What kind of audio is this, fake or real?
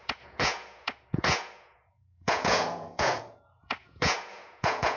fake